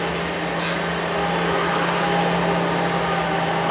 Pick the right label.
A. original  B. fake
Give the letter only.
A